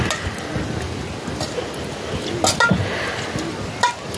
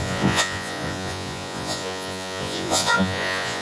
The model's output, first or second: second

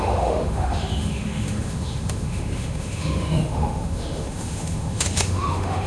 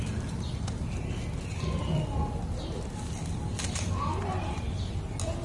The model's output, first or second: first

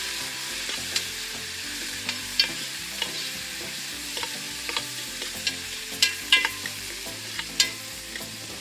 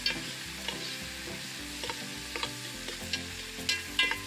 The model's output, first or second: first